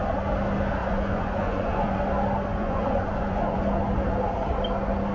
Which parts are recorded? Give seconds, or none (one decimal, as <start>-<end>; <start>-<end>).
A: 0.0-0.8; 2.0-2.5; 3.6-5.1